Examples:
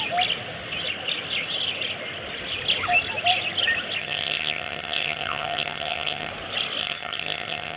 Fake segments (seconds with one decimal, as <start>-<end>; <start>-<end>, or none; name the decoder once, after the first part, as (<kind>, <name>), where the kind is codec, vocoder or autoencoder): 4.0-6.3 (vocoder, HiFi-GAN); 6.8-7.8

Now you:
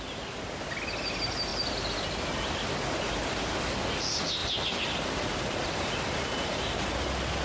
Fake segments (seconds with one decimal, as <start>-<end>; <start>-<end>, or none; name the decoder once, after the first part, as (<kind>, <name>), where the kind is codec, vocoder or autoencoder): none

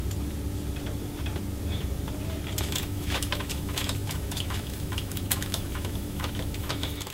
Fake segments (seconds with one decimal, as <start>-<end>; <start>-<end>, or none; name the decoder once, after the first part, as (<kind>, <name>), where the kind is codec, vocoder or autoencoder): 2.6-7.1 (autoencoder, DAC-VAE)